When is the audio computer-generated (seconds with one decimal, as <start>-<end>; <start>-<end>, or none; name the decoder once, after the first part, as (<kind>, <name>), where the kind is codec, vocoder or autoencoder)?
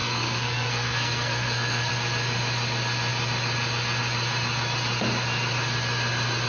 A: 0.0-1.9 (codec, SNAC)